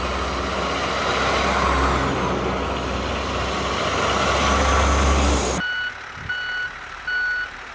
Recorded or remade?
recorded